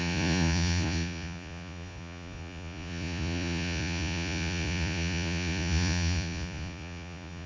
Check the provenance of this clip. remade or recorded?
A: remade